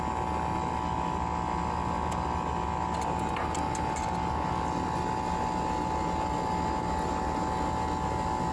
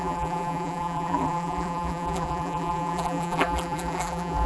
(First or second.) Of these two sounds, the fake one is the second